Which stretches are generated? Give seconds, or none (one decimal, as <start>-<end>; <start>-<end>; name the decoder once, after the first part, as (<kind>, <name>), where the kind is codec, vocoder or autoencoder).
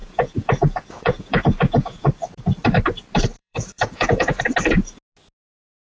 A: 0.0-2.1 (vocoder, Vocos); 3.4-4.4